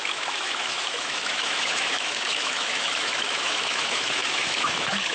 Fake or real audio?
fake